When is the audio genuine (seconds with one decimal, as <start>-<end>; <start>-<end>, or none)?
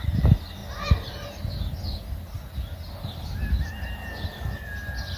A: 0.0-5.2